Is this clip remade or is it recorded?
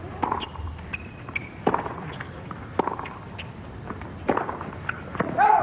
remade